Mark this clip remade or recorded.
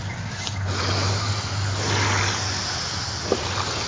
recorded